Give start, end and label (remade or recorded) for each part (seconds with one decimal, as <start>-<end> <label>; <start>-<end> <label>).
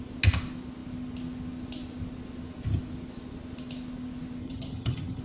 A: 0.0-4.4 recorded; 4.4-5.2 remade